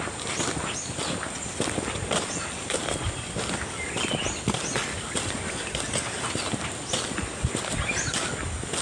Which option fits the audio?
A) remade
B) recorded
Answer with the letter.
B